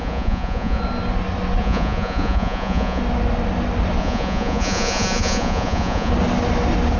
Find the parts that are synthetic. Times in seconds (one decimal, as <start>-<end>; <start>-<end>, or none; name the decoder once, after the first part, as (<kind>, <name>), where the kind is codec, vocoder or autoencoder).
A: 0.0-0.8 (vocoder, Vocos); 1.6-3.0; 4.0-6.1